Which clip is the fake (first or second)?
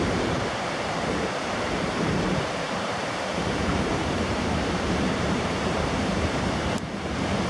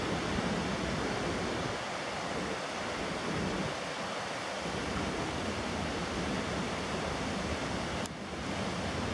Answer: first